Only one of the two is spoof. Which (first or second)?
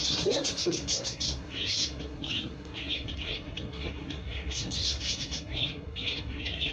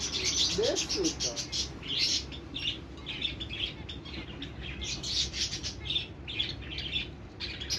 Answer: first